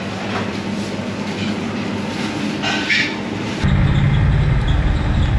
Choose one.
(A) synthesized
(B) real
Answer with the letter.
B